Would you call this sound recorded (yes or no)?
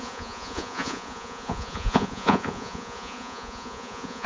no